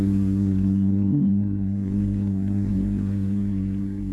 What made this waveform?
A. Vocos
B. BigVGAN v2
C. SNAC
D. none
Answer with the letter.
C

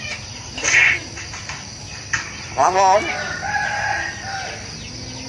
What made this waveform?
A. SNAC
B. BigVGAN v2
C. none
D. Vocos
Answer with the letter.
C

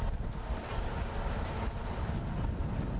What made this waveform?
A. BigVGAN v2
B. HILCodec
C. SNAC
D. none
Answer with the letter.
D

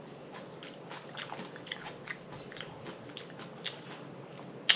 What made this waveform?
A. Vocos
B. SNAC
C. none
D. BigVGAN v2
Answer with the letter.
C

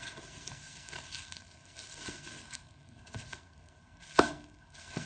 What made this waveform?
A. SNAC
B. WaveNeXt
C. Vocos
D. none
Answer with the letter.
A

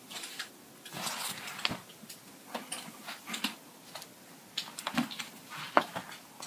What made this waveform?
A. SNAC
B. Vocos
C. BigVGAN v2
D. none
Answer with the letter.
D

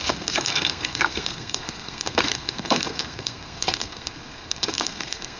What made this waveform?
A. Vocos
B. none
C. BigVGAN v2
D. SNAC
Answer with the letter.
D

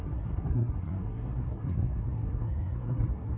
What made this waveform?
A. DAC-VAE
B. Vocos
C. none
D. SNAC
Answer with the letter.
D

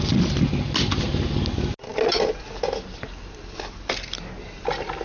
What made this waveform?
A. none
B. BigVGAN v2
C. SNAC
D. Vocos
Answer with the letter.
A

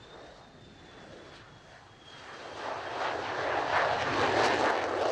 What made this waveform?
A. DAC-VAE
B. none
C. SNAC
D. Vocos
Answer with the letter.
B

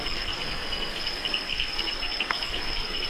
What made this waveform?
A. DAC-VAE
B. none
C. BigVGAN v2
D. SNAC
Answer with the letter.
D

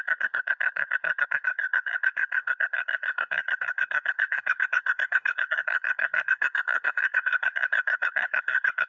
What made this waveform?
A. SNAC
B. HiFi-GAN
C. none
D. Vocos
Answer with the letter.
A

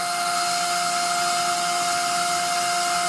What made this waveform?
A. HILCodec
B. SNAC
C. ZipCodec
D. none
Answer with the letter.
D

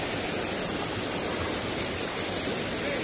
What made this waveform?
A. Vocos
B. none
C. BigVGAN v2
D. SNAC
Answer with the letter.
B